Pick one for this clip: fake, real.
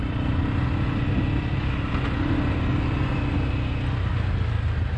real